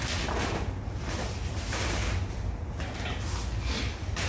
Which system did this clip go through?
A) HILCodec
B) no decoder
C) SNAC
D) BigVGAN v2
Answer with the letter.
B